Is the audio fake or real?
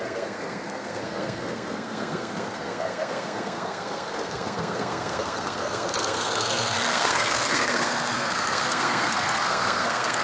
fake